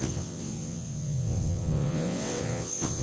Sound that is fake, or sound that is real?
fake